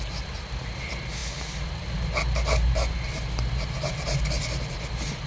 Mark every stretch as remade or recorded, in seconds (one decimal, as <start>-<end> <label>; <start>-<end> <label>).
0.0-5.3 recorded